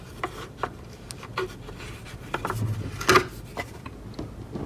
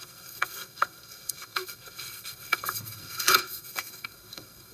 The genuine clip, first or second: first